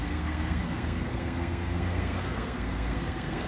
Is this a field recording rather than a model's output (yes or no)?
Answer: no